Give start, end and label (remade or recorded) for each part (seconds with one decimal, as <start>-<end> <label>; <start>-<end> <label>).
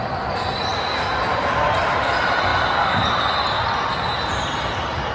0.0-5.1 recorded